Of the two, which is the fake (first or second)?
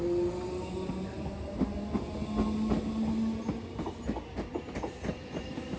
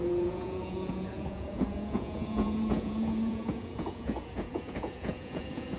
second